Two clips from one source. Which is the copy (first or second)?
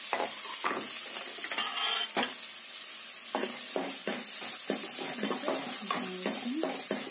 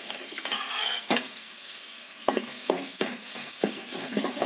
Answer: second